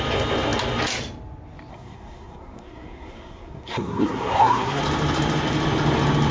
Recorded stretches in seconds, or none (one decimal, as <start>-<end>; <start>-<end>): 0.0-1.7; 4.8-6.3